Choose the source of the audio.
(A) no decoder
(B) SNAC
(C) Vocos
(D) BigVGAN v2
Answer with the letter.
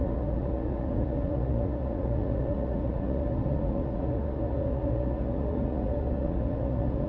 C